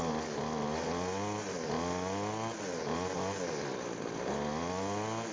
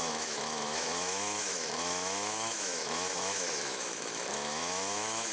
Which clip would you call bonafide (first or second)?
first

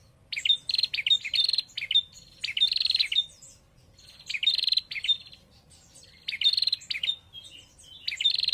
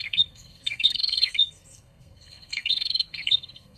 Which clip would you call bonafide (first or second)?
first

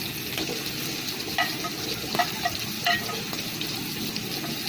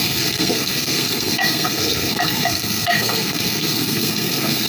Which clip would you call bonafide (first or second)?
first